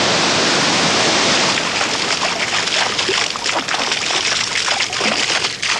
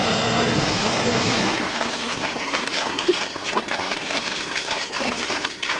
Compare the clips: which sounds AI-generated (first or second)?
second